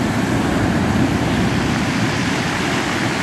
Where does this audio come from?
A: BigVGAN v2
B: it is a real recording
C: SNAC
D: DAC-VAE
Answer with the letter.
A